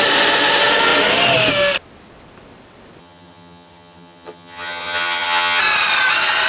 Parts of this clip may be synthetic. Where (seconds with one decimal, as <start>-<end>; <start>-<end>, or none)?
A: 3.0-5.6